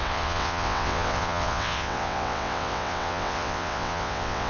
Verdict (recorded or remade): remade